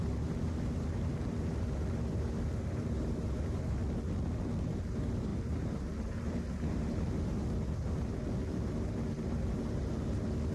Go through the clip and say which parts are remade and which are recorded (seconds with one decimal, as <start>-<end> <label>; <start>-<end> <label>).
0.0-3.8 remade; 3.8-4.6 recorded; 4.6-10.5 remade